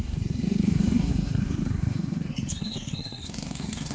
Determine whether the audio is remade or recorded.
remade